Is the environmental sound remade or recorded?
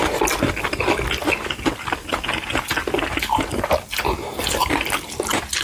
recorded